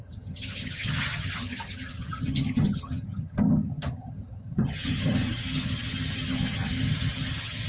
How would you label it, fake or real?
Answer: fake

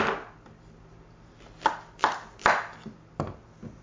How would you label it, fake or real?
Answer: real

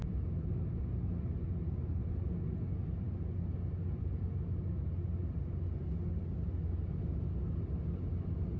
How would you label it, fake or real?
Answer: real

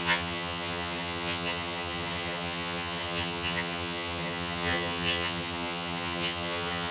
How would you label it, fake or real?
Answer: fake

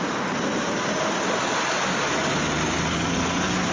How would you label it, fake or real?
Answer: real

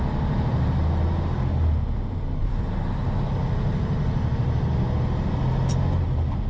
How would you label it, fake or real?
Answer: real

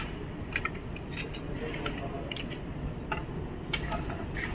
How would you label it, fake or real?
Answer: real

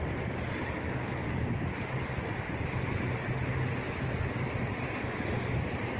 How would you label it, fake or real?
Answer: real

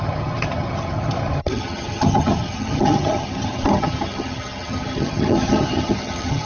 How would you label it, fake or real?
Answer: fake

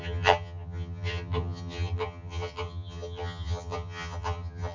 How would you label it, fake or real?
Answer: fake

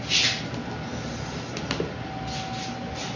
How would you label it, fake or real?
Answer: real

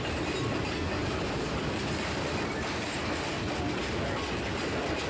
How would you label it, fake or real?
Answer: real